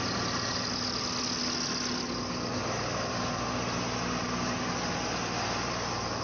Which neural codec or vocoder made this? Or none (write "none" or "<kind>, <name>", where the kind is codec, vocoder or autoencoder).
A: none